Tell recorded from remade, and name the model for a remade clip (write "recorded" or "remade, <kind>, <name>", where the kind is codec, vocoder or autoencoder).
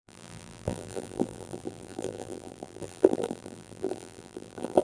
remade, vocoder, BigVGAN v2